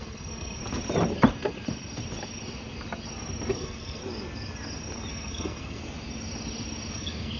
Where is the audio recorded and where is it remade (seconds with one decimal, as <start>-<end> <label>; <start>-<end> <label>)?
0.0-0.6 remade; 0.6-3.5 recorded; 3.5-4.0 remade; 4.0-5.1 recorded; 5.1-5.8 remade; 5.8-6.9 recorded; 6.9-7.4 remade